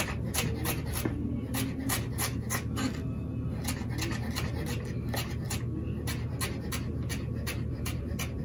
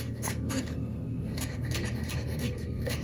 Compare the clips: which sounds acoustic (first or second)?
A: first